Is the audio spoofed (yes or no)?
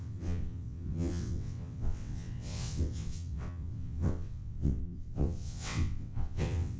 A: yes